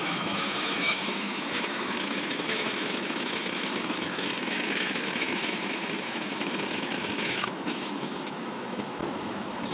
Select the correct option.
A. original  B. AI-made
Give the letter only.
B